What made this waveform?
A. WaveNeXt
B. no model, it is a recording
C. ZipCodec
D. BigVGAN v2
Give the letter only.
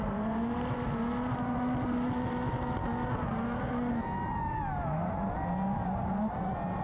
B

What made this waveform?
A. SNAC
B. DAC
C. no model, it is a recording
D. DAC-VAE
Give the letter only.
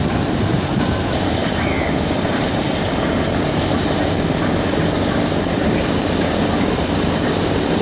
C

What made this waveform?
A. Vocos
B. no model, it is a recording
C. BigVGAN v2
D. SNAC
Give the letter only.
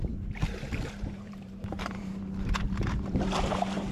C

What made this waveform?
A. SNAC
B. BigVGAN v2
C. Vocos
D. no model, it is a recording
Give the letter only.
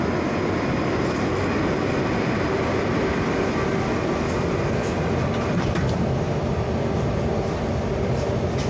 D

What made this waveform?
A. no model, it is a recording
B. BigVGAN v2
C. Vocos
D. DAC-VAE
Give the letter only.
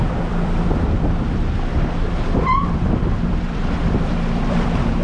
B